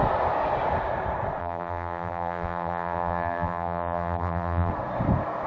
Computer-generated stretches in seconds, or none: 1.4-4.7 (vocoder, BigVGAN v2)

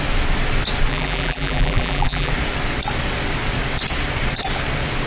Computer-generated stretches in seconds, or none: 0.9-2.3 (vocoder, BigVGAN v2)

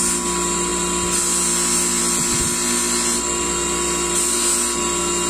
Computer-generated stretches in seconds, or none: none

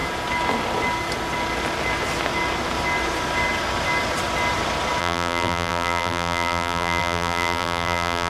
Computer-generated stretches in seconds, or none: 5.0-8.3 (vocoder, BigVGAN v2)

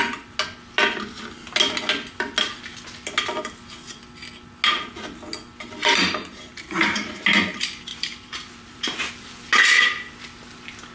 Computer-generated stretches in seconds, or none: 5.8-7.1 (vocoder, BigVGAN v2); 7.9-9.1

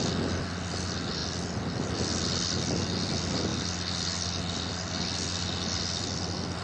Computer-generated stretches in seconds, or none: none

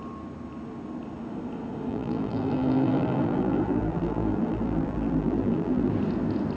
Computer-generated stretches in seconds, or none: 1.9-5.9 (vocoder, BigVGAN v2)